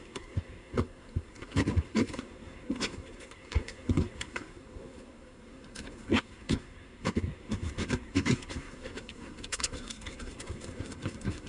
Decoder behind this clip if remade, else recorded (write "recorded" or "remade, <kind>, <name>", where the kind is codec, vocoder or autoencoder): remade, codec, SNAC